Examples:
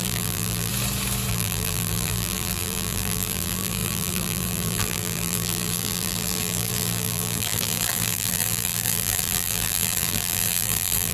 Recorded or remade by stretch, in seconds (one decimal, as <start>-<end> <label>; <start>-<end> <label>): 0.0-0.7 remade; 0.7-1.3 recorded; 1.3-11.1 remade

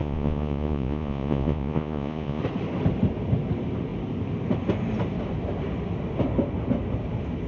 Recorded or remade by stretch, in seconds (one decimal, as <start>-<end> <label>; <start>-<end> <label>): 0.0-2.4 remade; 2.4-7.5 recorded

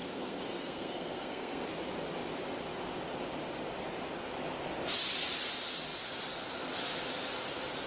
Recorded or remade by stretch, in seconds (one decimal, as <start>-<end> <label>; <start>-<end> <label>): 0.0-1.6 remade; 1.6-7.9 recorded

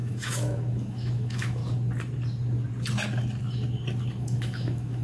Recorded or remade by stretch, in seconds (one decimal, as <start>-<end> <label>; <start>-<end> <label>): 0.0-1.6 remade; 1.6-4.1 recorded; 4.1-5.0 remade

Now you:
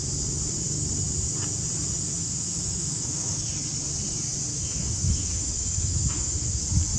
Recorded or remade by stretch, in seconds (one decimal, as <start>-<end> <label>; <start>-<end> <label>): 0.0-2.2 recorded; 2.2-3.4 remade; 3.4-4.5 recorded; 4.5-6.6 remade; 6.6-7.0 recorded

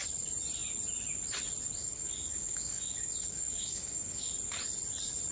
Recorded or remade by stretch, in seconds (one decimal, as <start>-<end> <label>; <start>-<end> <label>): 0.0-1.8 recorded; 1.8-4.3 remade; 4.3-5.3 recorded